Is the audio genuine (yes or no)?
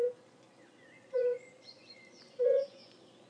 no